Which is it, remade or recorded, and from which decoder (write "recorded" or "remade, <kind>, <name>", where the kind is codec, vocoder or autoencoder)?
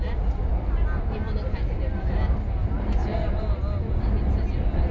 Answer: recorded